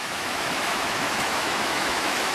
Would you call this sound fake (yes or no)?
yes